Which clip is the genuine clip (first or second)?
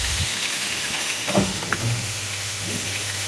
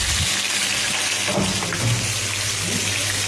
second